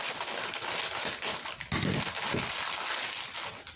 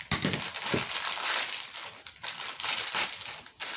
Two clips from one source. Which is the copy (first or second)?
second